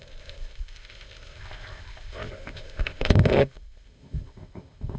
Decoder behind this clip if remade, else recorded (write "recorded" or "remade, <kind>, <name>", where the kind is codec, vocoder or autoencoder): remade, codec, ZipCodec